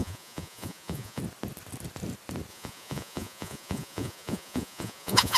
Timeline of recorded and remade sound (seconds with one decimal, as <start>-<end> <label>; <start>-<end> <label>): 0.0-1.2 remade; 1.2-2.5 recorded; 2.5-5.4 remade